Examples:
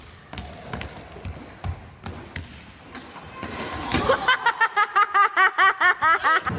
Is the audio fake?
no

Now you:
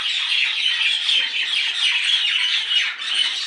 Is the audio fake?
no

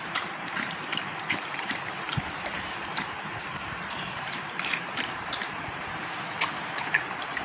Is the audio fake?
yes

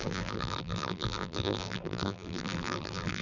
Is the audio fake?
yes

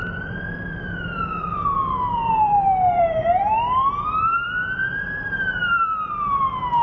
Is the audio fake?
yes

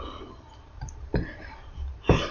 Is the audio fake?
yes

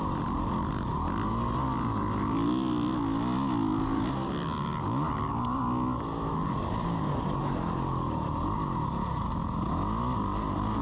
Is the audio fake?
no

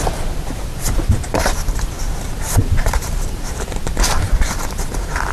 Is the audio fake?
yes